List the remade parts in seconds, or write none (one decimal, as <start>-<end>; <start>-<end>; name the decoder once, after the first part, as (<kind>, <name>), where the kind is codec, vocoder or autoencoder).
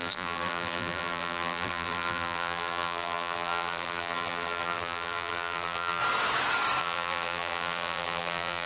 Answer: 0.0-6.0 (vocoder, BigVGAN v2); 6.8-8.7